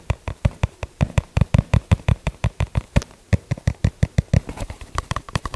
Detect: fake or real fake